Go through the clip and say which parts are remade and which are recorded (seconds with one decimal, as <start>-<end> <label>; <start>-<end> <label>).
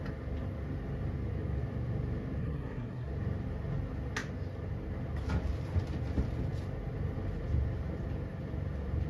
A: 0.0-2.4 recorded; 2.4-3.1 remade; 3.1-9.1 recorded